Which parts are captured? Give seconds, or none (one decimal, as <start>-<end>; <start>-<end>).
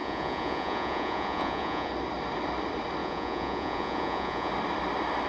1.9-3.0; 4.5-5.3